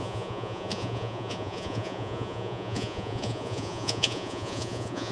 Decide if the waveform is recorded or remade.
remade